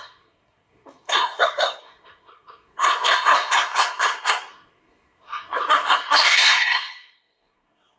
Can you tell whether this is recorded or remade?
remade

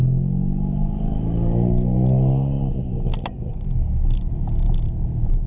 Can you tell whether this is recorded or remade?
recorded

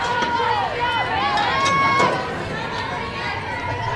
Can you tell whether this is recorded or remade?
recorded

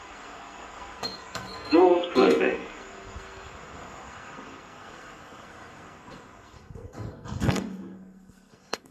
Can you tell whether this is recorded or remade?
remade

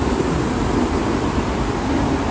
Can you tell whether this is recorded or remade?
recorded